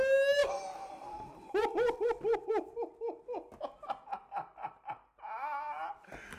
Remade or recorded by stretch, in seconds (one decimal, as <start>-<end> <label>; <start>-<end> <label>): 0.0-0.4 recorded; 0.4-2.5 remade; 2.5-4.2 recorded; 4.2-4.9 remade; 4.9-6.4 recorded